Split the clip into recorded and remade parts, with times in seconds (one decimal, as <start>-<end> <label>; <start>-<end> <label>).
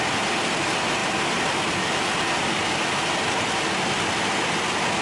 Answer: 0.0-5.0 recorded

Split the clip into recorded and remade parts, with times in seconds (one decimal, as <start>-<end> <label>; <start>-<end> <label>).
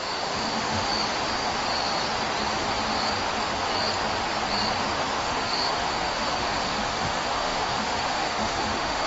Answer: 0.0-0.9 remade; 0.9-5.2 recorded; 5.2-9.1 remade